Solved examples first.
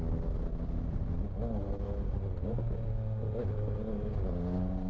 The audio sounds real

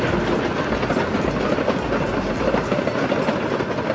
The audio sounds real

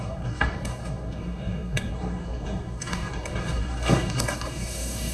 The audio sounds fake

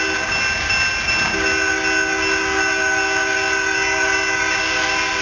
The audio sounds real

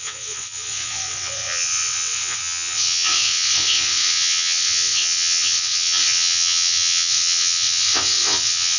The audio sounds fake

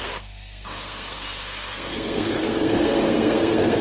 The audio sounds fake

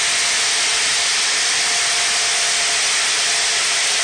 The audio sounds real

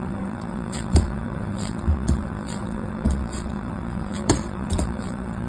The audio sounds fake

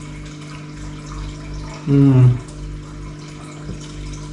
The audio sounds real